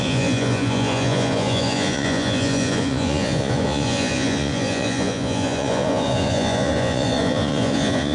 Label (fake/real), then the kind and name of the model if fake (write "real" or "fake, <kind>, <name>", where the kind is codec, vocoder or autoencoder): fake, vocoder, Vocos